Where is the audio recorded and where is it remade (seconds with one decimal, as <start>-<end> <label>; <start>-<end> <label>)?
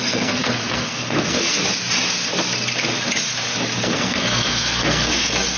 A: 0.0-1.6 remade; 1.6-3.8 recorded; 3.8-5.6 remade